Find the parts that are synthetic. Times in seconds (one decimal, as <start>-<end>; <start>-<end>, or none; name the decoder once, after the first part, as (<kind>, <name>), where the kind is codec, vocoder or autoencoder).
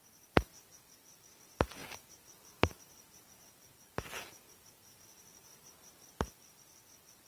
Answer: 1.8-6.2 (vocoder, BigVGAN v2)